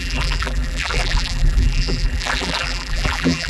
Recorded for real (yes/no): no